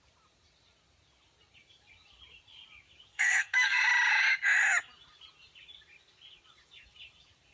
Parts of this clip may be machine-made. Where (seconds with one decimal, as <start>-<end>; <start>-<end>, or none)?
3.1-3.8